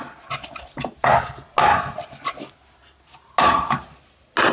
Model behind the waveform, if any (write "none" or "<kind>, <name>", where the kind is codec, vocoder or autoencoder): none